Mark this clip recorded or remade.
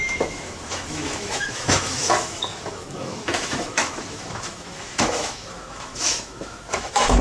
remade